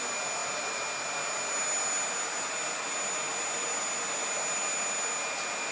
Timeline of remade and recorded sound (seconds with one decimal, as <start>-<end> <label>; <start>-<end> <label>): 0.0-5.7 recorded